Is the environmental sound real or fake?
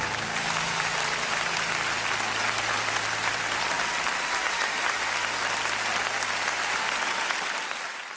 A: real